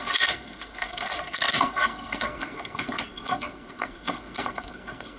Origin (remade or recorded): remade